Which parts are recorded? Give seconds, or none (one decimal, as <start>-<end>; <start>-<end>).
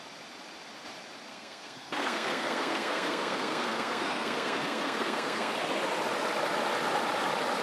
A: 0.0-1.3; 5.5-7.6